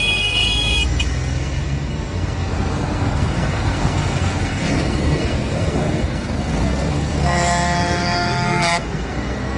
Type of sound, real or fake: fake